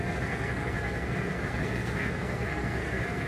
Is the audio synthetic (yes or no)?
yes